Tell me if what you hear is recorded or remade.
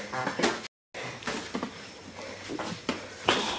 recorded